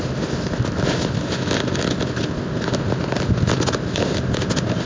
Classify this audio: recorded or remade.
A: recorded